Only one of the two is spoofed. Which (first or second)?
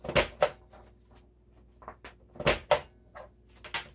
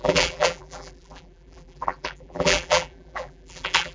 second